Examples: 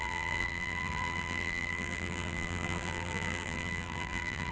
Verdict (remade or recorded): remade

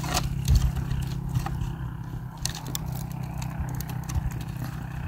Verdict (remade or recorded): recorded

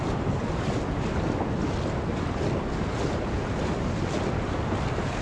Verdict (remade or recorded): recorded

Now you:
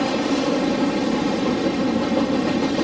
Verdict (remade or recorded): remade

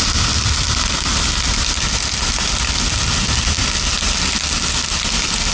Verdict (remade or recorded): recorded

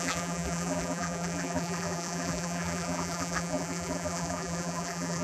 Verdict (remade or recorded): remade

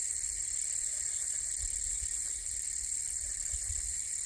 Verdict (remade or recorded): remade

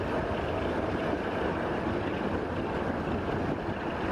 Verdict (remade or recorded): recorded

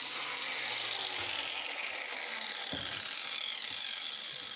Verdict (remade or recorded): recorded